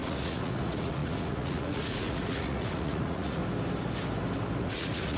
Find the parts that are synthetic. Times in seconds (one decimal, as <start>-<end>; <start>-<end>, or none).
0.0-3.4; 4.6-5.2